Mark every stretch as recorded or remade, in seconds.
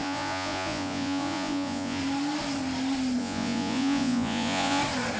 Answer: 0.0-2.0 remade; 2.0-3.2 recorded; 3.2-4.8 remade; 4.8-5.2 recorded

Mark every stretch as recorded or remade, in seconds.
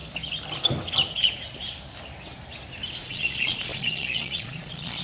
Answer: 0.0-3.0 recorded; 3.0-5.0 remade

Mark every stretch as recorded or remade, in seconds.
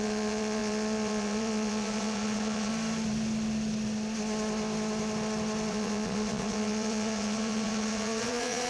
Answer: 0.0-2.7 remade; 2.7-5.7 recorded; 5.7-8.7 remade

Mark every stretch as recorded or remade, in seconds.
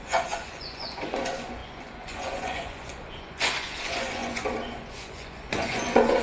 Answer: 0.0-6.2 remade